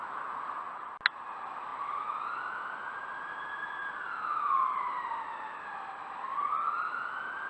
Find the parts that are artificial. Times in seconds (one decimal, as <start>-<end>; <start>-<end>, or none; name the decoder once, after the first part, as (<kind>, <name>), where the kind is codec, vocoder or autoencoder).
none